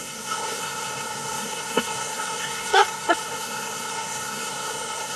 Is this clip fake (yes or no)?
yes